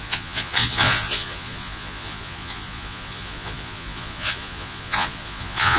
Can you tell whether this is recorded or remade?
remade